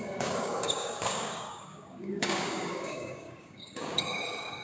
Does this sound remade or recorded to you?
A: remade